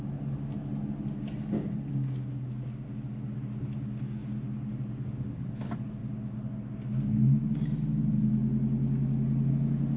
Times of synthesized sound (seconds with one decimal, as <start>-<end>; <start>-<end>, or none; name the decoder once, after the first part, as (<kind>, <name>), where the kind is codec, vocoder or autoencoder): none